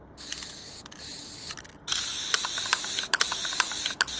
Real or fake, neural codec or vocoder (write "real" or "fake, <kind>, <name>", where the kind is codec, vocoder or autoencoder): real